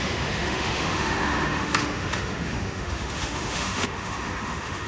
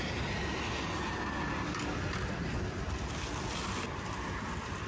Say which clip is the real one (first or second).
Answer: second